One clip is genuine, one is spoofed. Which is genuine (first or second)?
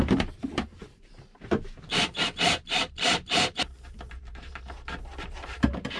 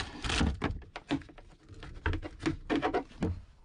second